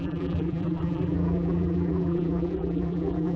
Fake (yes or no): yes